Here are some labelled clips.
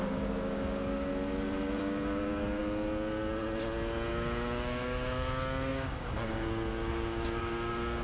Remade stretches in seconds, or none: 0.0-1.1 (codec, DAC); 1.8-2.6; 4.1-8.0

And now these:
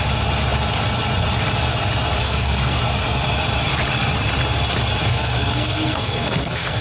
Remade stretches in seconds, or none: 2.2-2.8 (codec, SNAC); 5.0-6.8

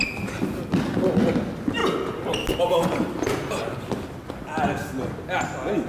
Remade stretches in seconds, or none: none

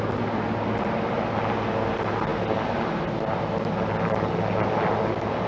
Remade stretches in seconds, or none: none

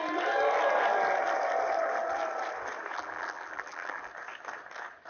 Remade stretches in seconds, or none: 2.9-4.1 (vocoder, BigVGAN v2)

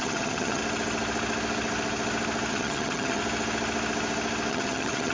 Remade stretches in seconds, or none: 0.0-0.6 (vocoder, HiFi-GAN); 2.5-3.2; 4.5-5.1